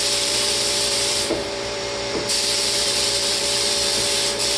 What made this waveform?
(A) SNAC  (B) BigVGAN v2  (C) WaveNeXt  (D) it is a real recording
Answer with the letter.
B